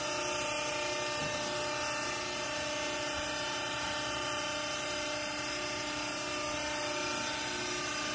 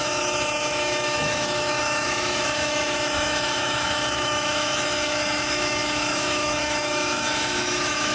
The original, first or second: first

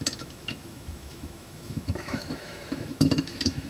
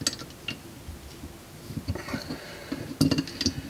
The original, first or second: second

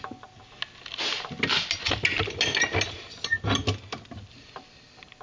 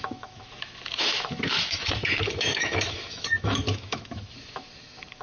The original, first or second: first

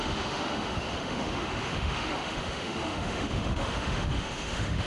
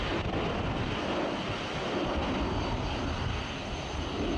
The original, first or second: second